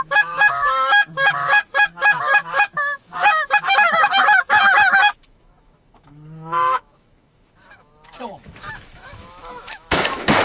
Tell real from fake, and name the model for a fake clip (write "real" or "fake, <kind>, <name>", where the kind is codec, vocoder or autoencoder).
fake, autoencoder, DAC-VAE